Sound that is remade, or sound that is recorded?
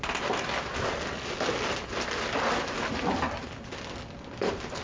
recorded